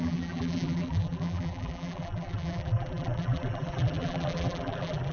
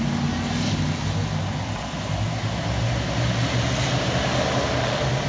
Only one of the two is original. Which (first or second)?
second